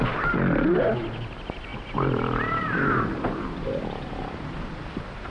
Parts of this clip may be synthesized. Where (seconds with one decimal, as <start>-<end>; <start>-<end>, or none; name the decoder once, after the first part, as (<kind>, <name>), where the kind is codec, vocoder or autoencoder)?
1.7-5.3 (vocoder, BigVGAN v2)